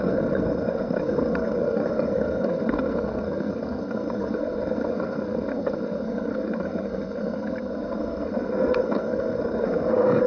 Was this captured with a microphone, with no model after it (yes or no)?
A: no